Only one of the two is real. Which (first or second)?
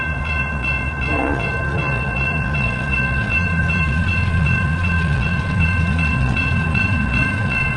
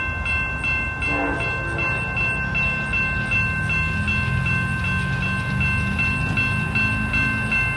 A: second